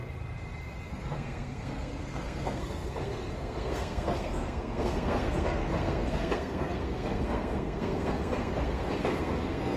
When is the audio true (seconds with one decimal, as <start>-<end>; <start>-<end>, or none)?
0.0-0.9